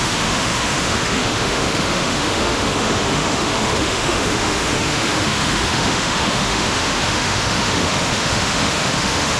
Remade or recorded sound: remade